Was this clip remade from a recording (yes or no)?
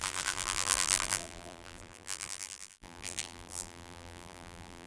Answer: yes